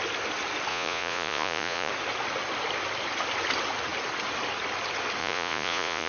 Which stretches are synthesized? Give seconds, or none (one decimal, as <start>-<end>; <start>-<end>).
0.7-1.9; 5.2-6.1